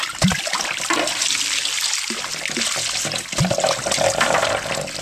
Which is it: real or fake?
real